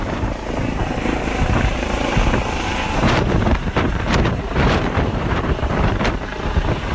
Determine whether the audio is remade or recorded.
remade